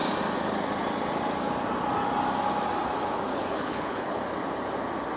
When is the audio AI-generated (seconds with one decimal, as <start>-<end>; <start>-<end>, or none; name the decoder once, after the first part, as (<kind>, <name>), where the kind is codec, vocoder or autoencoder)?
3.3-4.2 (codec, HILCodec)